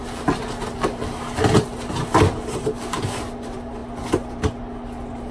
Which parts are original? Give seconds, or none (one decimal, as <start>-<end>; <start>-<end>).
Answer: 0.0-5.3

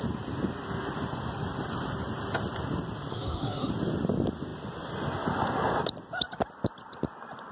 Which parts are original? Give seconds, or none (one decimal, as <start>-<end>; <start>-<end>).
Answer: 0.0-3.1; 3.7-7.5

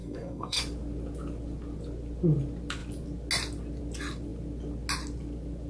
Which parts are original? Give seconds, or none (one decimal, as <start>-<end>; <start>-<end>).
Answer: 0.6-5.7

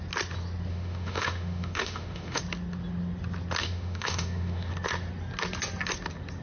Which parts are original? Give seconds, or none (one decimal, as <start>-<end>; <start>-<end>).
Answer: 0.0-0.7; 2.4-3.6; 4.7-6.4

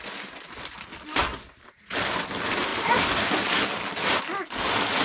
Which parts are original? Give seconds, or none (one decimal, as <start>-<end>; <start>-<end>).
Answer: 0.0-5.0

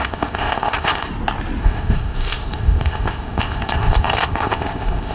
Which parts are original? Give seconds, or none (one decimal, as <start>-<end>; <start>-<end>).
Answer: 1.1-1.6

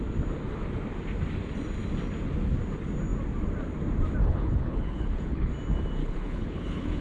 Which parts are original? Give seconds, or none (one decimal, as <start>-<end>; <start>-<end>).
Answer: 0.0-4.2; 5.5-6.0

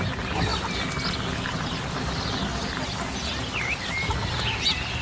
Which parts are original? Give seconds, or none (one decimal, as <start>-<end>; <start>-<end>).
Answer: 0.0-5.0